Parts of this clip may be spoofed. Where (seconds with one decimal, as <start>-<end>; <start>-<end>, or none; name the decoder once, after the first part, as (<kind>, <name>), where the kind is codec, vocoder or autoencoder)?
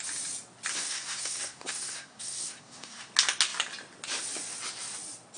0.7-3.1 (codec, SNAC)